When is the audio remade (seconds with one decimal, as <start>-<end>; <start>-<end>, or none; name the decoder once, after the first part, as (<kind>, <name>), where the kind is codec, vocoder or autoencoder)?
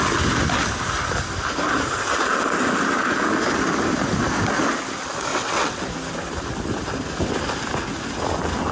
5.3-5.8 (vocoder, WaveNeXt)